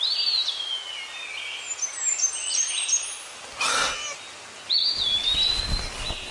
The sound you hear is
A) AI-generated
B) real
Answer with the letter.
B